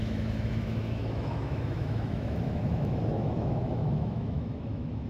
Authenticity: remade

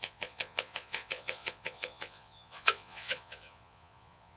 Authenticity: remade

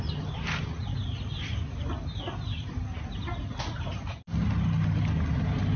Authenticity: recorded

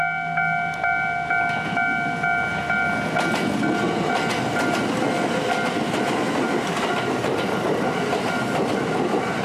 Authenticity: recorded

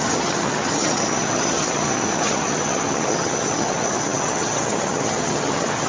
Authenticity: remade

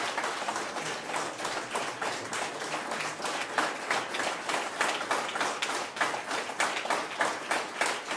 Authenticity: recorded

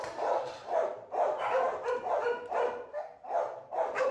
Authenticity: remade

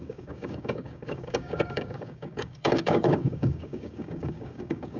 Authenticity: remade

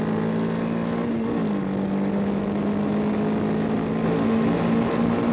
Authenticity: recorded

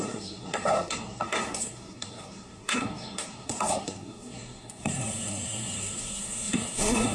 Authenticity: remade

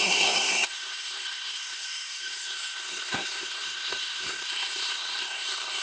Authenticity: remade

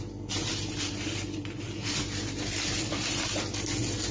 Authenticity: recorded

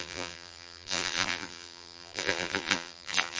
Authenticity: remade